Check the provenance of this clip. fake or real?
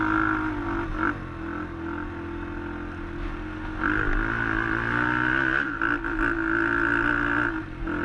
real